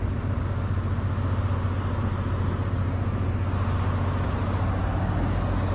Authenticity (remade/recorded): recorded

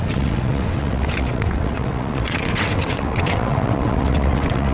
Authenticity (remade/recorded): remade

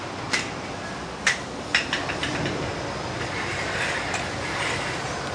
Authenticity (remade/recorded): recorded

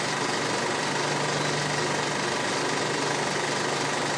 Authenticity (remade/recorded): recorded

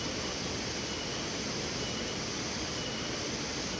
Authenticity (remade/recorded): recorded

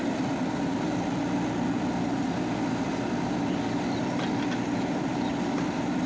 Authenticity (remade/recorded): recorded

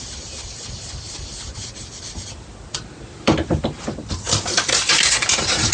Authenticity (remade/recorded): recorded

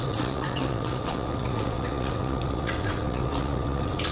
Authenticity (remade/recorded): remade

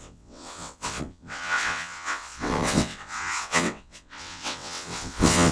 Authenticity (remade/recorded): remade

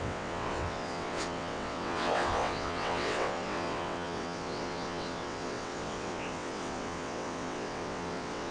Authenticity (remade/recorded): remade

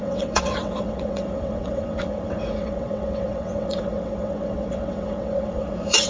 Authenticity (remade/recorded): remade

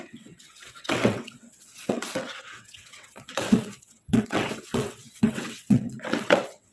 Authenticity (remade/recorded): remade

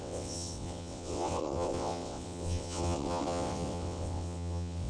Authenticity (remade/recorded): remade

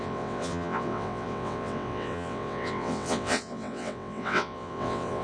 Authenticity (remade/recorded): remade